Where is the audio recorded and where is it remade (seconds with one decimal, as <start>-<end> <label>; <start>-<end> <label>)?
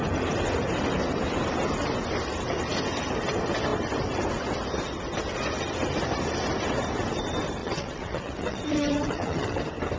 0.0-7.6 recorded; 7.6-9.6 remade; 9.6-10.0 recorded